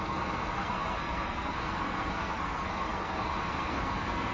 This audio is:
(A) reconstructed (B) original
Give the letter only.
A